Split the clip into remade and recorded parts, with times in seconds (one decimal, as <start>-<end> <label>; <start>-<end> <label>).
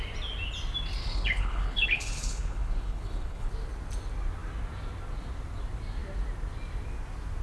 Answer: 0.0-1.0 recorded; 1.0-3.5 remade; 3.5-7.4 recorded